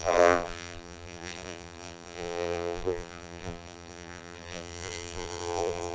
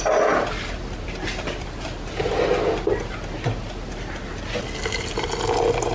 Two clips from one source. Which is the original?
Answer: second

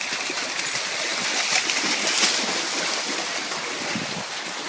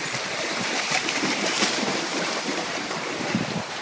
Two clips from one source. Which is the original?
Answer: first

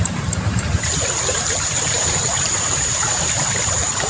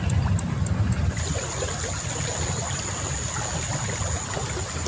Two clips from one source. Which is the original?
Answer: second